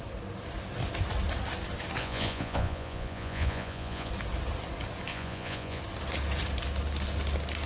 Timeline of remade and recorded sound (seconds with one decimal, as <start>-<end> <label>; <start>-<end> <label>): 0.0-2.0 recorded; 2.0-4.1 remade; 4.1-5.1 recorded; 5.1-5.8 remade; 5.8-7.7 recorded

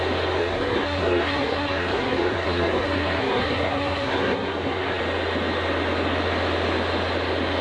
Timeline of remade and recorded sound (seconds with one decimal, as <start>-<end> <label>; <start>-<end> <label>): 0.0-0.4 recorded; 0.4-5.0 remade; 5.0-7.6 recorded